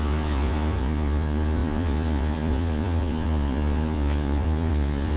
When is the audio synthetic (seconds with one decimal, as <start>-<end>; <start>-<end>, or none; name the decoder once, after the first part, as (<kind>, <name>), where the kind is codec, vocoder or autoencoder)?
0.0-5.2 (vocoder, Vocos)